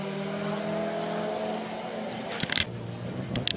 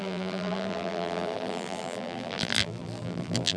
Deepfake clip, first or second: second